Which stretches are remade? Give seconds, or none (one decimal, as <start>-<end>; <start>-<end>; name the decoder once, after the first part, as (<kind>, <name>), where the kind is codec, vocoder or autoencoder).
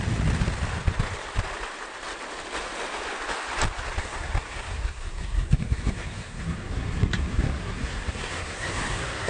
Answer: 4.0-9.3 (codec, SNAC)